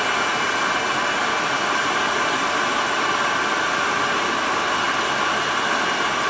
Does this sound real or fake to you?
real